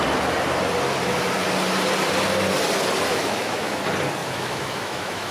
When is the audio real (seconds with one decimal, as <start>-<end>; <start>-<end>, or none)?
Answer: 0.0-3.1; 3.8-4.2